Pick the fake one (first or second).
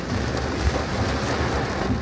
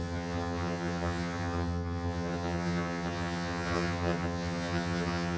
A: second